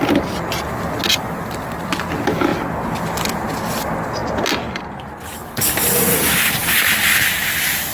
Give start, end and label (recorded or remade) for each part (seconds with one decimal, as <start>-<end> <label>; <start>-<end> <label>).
0.0-7.9 recorded